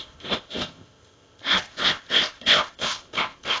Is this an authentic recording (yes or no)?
no